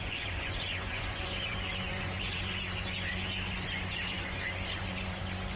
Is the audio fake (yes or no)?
yes